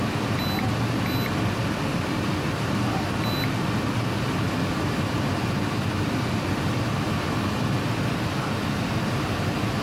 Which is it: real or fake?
real